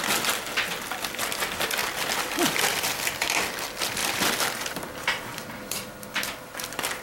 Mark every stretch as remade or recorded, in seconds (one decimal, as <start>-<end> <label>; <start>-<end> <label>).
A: 0.0-1.8 recorded; 1.8-2.6 remade; 2.6-4.0 recorded; 4.0-4.8 remade; 4.8-5.3 recorded; 5.3-6.3 remade; 6.3-7.0 recorded